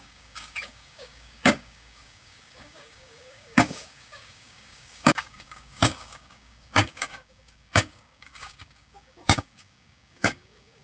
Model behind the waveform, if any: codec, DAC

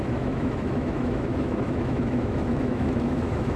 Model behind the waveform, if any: autoencoder, DAC-VAE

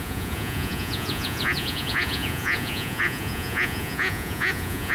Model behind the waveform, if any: vocoder, Vocos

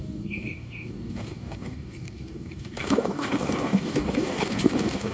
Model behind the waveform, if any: codec, DAC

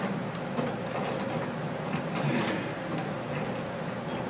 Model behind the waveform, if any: none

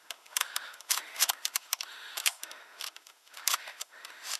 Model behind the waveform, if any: autoencoder, DAC-VAE